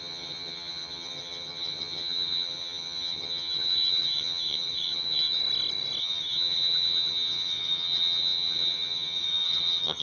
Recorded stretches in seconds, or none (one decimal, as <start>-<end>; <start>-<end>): 5.4-6.0